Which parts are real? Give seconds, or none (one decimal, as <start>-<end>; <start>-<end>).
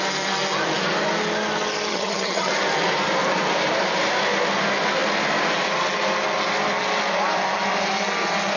0.0-1.9; 2.5-8.6